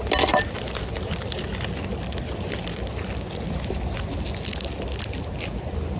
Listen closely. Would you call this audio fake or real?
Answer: real